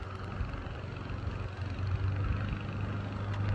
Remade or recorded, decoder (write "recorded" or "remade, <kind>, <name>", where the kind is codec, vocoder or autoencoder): recorded